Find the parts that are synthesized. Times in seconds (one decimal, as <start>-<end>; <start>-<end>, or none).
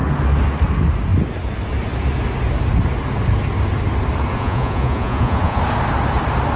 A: 4.3-5.6